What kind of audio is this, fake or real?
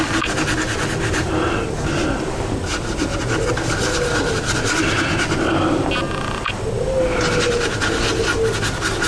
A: real